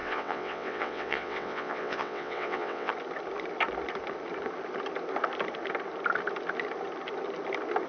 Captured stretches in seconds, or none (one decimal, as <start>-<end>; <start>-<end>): 2.9-7.9